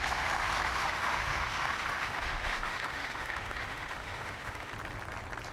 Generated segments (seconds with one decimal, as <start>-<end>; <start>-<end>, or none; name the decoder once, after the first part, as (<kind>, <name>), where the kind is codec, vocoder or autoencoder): 0.0-4.7 (autoencoder, DAC-VAE)

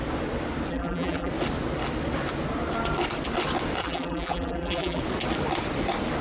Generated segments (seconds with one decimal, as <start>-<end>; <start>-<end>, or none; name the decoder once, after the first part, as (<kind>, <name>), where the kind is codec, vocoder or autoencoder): 0.7-1.3 (vocoder, BigVGAN v2); 3.8-5.0

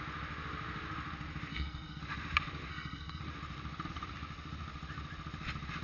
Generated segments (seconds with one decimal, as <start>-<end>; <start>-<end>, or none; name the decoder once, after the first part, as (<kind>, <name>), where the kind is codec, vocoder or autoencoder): 1.5-2.0 (codec, SNAC); 2.7-3.2

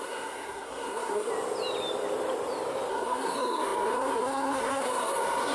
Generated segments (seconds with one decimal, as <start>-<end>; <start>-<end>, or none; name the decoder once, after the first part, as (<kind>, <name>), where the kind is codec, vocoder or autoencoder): 0.0-1.3 (codec, SNAC); 2.9-5.5

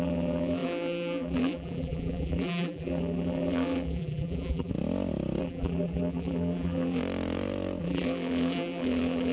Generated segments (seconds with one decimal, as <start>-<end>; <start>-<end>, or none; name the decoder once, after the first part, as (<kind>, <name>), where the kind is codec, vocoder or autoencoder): 0.0-4.7 (vocoder, BigVGAN v2); 5.4-7.0; 7.8-9.3

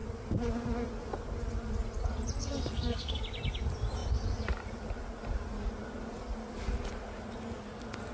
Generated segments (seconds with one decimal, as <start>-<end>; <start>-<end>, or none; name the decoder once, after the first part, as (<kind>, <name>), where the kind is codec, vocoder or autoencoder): 2.4-3.2 (codec, SNAC)

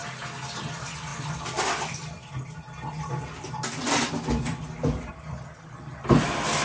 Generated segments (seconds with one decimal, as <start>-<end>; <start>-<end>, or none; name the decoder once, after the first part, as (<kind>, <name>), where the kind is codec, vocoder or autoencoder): none